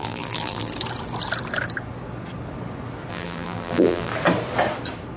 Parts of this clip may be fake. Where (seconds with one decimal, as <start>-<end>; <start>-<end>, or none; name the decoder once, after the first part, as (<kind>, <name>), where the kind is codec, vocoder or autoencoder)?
0.0-0.7 (vocoder, BigVGAN v2); 3.1-4.1